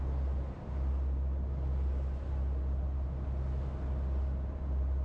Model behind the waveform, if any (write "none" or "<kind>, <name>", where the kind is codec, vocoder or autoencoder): none